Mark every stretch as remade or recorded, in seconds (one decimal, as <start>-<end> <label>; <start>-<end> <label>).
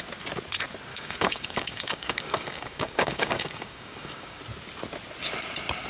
0.0-0.9 recorded; 0.9-4.4 remade; 4.4-5.9 recorded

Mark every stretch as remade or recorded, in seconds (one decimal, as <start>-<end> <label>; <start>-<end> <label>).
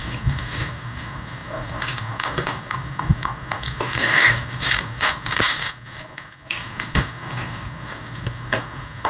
0.0-9.1 remade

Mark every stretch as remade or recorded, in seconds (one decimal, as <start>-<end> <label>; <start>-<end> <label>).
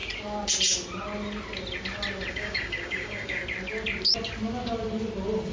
0.0-2.3 recorded; 2.3-3.4 remade; 3.4-5.5 recorded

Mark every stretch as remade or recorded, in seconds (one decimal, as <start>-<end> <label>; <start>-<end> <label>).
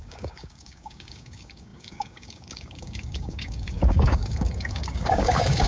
0.0-5.7 remade